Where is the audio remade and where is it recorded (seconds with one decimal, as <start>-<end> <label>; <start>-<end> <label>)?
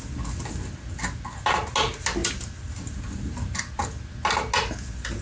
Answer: 0.0-5.2 recorded